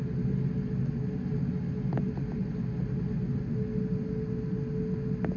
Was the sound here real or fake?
real